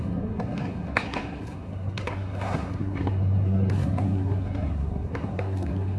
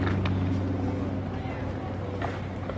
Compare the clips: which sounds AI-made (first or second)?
first